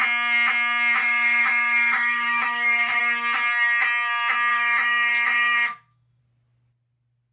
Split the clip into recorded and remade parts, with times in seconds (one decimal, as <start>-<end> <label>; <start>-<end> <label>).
0.0-1.0 recorded; 1.0-3.0 remade; 3.0-4.5 recorded; 4.5-6.2 remade; 6.2-7.3 recorded